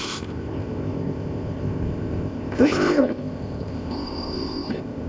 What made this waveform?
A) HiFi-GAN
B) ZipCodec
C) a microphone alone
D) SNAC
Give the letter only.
B